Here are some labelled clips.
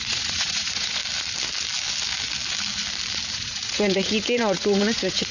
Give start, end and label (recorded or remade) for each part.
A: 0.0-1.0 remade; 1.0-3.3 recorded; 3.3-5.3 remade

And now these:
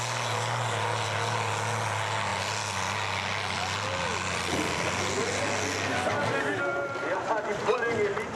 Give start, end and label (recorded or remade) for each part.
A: 0.0-8.4 recorded

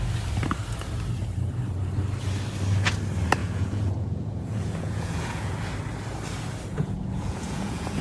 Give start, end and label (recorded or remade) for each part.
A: 0.0-3.4 recorded; 3.4-5.7 remade; 5.7-6.7 recorded; 6.7-8.0 remade

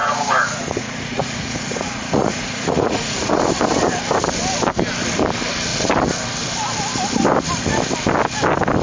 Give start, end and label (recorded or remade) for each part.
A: 0.0-3.4 remade; 3.4-8.8 recorded

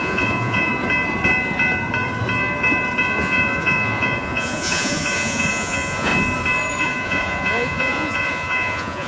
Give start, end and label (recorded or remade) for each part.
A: 0.0-0.7 remade; 0.7-3.0 recorded; 3.0-6.1 remade; 6.1-6.8 recorded; 6.8-9.1 remade

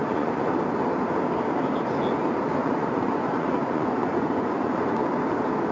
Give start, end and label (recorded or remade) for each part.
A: 0.0-0.5 remade; 0.5-2.6 recorded; 2.6-5.0 remade; 5.0-5.7 recorded